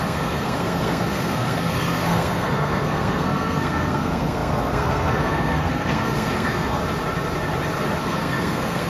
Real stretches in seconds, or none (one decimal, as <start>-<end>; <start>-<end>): 6.8-8.0